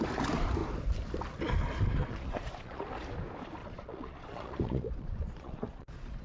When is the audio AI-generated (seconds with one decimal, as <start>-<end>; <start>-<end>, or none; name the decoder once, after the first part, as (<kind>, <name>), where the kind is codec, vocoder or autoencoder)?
2.0-2.8 (vocoder, Vocos); 3.6-6.2